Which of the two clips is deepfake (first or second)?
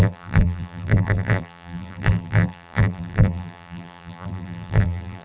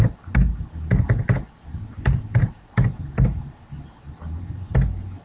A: first